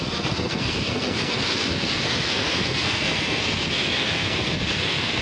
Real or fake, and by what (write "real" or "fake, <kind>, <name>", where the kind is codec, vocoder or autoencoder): fake, codec, SNAC